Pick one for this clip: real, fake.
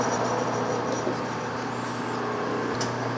real